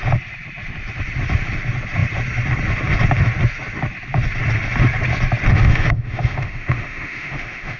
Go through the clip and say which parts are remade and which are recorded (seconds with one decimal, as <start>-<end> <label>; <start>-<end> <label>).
0.0-5.5 recorded; 5.5-7.8 remade

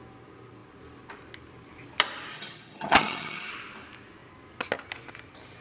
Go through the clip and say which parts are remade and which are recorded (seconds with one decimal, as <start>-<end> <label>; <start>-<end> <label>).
0.0-2.3 recorded; 2.3-3.5 remade; 3.5-5.6 recorded

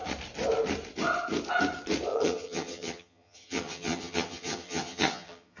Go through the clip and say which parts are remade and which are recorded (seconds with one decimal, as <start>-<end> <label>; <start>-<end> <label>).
0.0-2.1 recorded; 2.1-5.6 remade

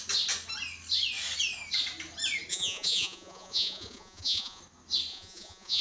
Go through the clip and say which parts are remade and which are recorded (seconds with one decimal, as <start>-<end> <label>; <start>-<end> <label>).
0.0-2.5 recorded; 2.5-4.6 remade; 4.6-5.1 recorded; 5.1-5.8 remade